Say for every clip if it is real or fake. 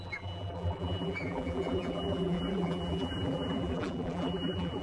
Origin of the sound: fake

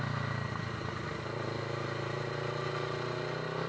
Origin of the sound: real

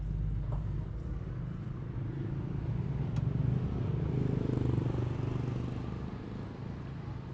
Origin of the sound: real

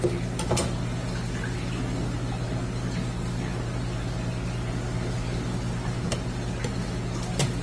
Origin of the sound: real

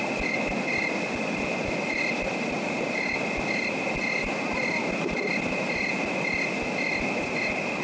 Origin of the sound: real